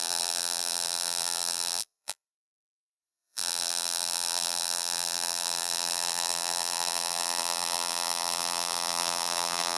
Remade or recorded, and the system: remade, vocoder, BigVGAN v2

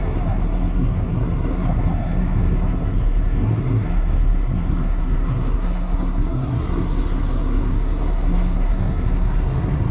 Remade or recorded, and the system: remade, codec, SNAC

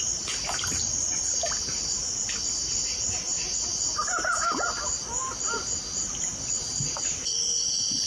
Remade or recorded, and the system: recorded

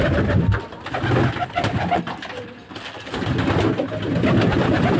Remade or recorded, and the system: recorded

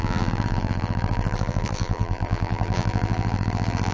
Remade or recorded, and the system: remade, vocoder, BigVGAN v2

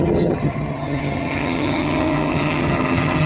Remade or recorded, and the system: remade, vocoder, HiFi-GAN